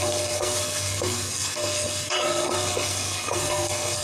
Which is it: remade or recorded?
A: remade